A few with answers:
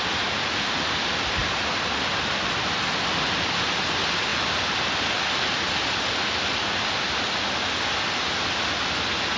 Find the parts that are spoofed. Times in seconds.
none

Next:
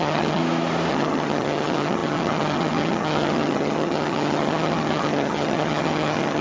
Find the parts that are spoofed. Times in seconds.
0.0-0.4; 0.9-6.4

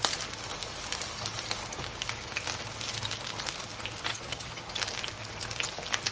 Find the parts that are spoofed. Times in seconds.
4.1-4.7

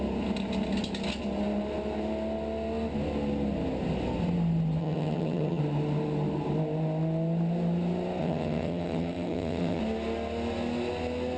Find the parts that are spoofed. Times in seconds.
4.8-5.6; 8.2-9.8

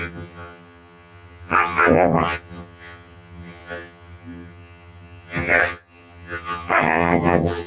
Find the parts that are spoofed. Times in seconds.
0.0-7.7

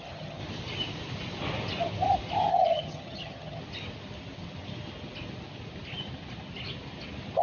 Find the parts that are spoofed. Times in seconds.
0.0-0.4; 2.5-3.6

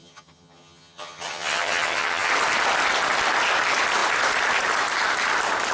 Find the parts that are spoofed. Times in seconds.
0.0-2.3